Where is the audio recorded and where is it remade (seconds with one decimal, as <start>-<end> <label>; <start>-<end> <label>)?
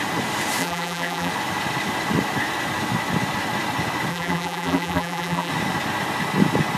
0.0-0.6 recorded; 0.6-1.3 remade; 1.3-4.1 recorded; 4.1-5.5 remade; 5.5-6.8 recorded